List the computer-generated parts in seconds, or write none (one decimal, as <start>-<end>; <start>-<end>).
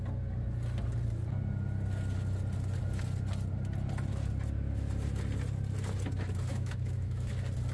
6.5-7.3